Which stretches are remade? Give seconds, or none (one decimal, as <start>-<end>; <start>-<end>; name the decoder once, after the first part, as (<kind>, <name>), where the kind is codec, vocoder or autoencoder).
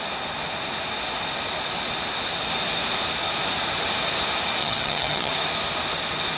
4.6-5.3 (vocoder, HiFi-GAN)